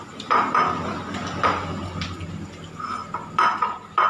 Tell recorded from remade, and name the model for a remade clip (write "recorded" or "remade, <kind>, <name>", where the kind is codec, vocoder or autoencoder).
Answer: recorded